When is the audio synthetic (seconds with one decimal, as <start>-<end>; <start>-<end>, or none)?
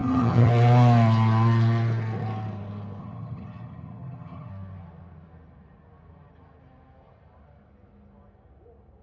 0.0-0.5; 3.0-4.5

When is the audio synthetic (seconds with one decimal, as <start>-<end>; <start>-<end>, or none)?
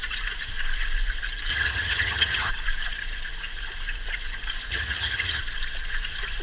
1.5-2.5; 4.7-5.4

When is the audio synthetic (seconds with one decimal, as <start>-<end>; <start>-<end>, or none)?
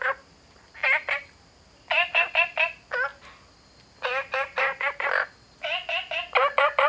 none